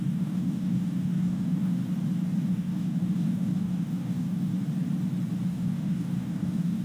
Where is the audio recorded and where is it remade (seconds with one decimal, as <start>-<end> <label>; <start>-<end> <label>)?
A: 0.0-1.8 remade; 1.8-2.5 recorded; 2.5-4.5 remade; 4.5-5.5 recorded; 5.5-6.8 remade